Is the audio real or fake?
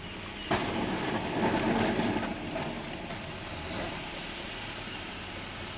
real